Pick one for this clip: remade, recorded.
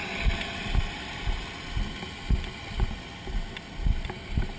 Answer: recorded